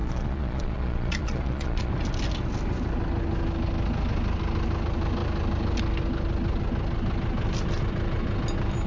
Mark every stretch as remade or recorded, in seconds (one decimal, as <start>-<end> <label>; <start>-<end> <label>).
0.0-1.9 remade; 1.9-8.9 recorded